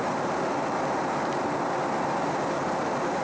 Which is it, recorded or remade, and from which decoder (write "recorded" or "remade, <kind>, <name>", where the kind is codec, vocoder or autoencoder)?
recorded